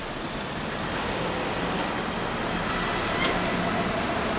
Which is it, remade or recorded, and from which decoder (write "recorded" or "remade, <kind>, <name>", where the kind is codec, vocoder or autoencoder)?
recorded